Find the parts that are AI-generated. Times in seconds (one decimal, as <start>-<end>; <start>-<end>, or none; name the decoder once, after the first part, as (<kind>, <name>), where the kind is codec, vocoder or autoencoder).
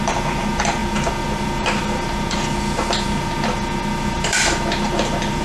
0.0-5.4 (vocoder, BigVGAN v2)